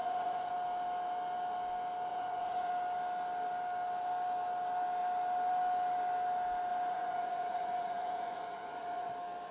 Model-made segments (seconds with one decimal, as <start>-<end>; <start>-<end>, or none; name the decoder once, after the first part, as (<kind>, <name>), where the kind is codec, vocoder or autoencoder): 0.0-0.5 (vocoder, Vocos); 2.1-2.7; 6.7-9.1